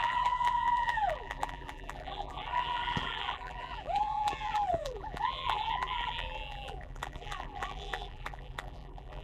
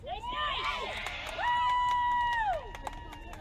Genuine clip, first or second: second